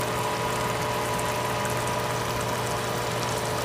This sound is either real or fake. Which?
real